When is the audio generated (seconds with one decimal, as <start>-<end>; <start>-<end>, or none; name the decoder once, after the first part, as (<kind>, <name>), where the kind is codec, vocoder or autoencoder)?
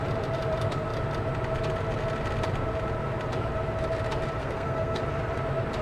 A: 4.4-5.0 (codec, SNAC)